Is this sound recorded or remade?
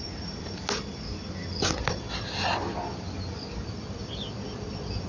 recorded